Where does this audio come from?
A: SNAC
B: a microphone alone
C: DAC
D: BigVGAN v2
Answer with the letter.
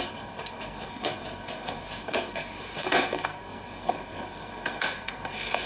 A